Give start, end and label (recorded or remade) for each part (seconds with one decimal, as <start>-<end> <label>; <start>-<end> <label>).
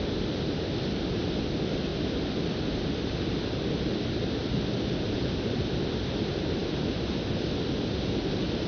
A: 0.0-8.7 recorded